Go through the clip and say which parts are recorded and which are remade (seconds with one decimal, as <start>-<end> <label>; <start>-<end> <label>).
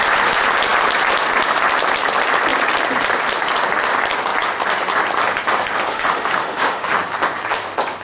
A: 0.0-5.9 recorded; 5.9-6.9 remade; 6.9-8.0 recorded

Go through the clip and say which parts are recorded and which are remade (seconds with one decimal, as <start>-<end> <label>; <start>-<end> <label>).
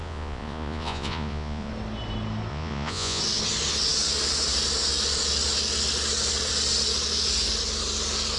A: 0.0-1.7 remade; 1.7-2.5 recorded; 2.5-3.2 remade; 3.2-8.4 recorded